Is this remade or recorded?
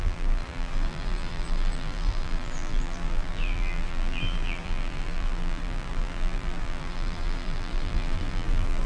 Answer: remade